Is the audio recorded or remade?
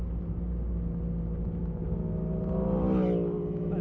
recorded